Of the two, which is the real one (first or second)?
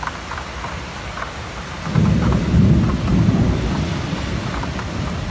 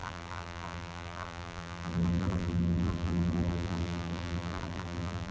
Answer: first